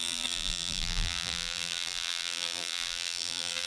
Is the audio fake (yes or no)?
yes